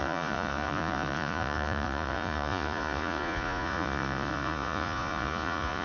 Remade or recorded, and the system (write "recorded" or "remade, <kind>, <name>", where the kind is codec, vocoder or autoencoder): remade, vocoder, Vocos